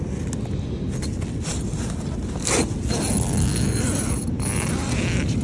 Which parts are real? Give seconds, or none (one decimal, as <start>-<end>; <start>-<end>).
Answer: 0.0-5.4

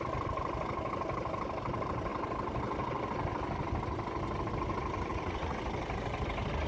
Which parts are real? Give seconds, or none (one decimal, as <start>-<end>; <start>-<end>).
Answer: 0.0-5.1; 5.6-6.7

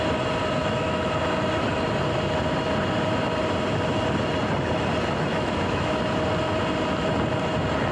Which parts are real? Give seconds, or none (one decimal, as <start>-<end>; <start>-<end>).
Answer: 0.0-0.6; 1.1-5.3; 6.0-7.9

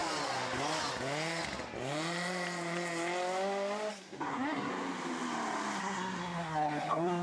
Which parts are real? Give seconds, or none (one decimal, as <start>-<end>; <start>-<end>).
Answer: 0.0-3.9; 4.7-5.8